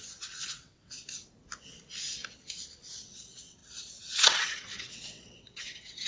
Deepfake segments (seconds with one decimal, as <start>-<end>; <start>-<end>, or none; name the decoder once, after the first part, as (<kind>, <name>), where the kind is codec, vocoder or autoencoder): 0.0-1.0 (vocoder, WaveNeXt); 2.9-6.1